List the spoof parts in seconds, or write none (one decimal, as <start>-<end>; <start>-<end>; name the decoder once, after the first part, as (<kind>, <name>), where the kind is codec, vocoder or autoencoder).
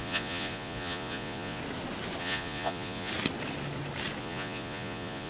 0.0-1.6 (vocoder, Vocos); 2.2-3.1; 4.2-5.3